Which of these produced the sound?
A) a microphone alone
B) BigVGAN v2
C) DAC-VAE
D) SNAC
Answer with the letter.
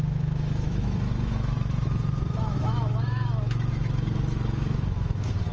C